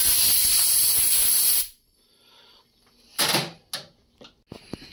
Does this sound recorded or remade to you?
recorded